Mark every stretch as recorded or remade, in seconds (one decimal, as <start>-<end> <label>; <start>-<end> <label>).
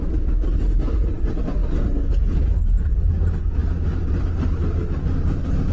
0.0-5.7 recorded